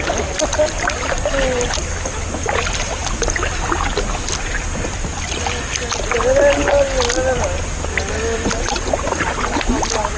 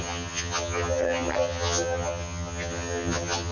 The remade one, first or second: second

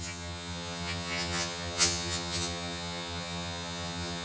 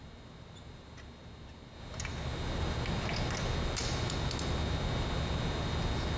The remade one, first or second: first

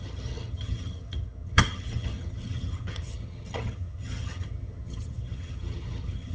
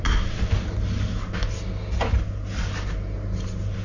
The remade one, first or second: first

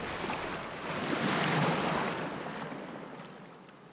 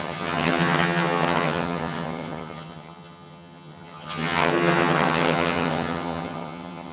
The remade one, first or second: second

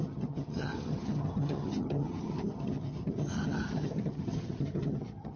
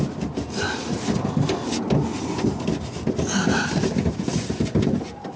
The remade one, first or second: first